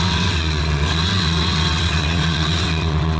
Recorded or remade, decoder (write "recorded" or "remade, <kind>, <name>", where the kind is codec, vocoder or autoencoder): remade, vocoder, WaveNeXt